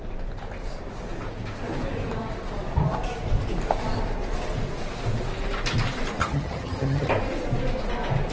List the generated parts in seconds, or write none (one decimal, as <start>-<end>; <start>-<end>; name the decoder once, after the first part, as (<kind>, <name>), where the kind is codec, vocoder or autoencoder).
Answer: 6.2-7.1 (vocoder, HiFi-GAN)